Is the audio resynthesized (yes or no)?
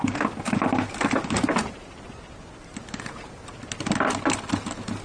no